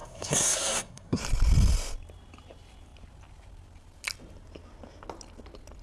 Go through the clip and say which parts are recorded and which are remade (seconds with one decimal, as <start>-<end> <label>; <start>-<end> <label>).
0.0-1.2 remade; 1.2-5.8 recorded